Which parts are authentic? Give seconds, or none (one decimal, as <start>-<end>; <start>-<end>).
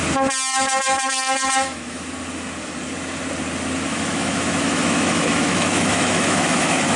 0.0-0.5; 2.0-3.9